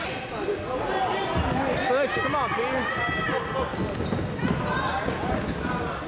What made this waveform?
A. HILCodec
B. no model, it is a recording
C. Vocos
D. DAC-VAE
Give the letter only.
B